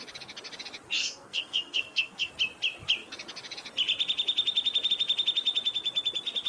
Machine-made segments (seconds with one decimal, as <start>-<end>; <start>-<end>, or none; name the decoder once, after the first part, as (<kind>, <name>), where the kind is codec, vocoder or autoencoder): 1.0-2.3 (codec, SNAC)